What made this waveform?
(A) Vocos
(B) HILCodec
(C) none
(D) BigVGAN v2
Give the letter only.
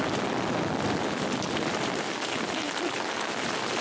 C